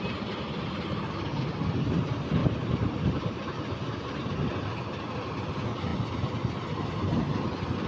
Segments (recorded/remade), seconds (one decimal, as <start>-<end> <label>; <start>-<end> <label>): 0.0-2.4 recorded; 2.4-4.5 remade; 4.5-7.9 recorded